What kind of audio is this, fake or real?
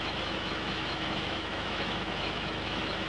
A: fake